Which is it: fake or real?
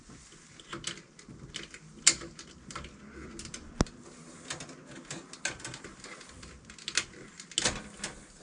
real